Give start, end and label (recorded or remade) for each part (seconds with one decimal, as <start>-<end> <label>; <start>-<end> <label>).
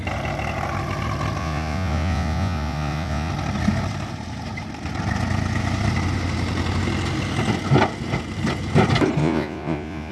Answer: 0.0-1.4 recorded; 1.4-3.3 remade; 3.3-9.2 recorded; 9.2-10.1 remade